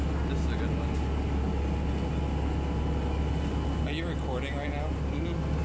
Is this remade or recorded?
recorded